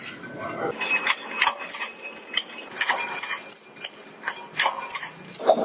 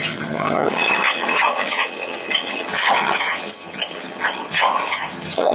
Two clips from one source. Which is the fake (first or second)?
second